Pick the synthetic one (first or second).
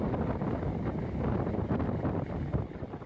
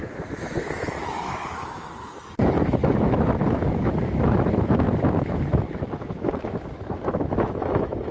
second